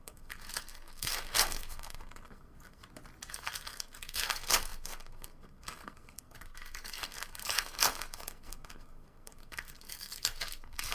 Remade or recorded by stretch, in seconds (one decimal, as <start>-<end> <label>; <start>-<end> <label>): 0.0-2.8 remade; 2.8-3.3 recorded; 3.3-10.9 remade